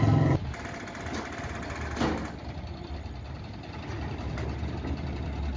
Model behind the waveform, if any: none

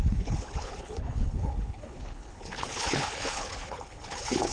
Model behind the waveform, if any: codec, HILCodec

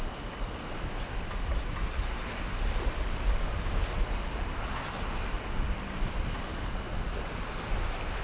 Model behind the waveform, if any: none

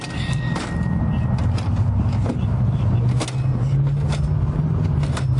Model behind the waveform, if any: none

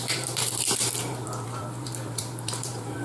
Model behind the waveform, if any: vocoder, BigVGAN v2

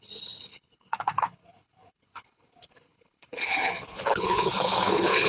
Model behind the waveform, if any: codec, HILCodec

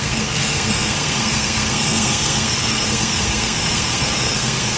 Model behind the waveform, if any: codec, SNAC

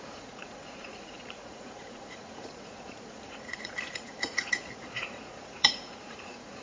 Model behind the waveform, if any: vocoder, Vocos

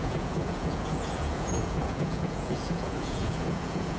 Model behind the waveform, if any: vocoder, Vocos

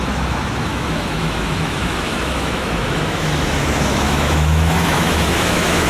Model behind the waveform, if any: autoencoder, DAC-VAE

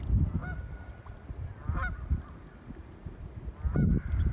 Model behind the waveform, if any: none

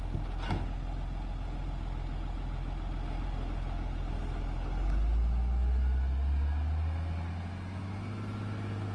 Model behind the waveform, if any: none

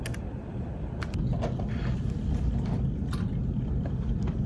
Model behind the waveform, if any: none